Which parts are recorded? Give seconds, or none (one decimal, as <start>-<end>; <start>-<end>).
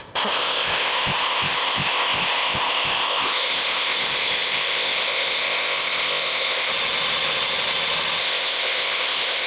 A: 6.7-8.2